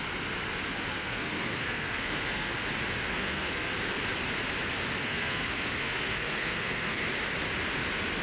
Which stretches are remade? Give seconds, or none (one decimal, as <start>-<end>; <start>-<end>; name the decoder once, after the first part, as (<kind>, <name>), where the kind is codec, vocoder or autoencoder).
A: 0.9-2.5 (codec, SNAC); 3.1-3.7; 5.0-7.0